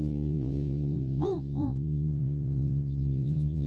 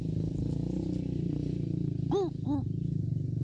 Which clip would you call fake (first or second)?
first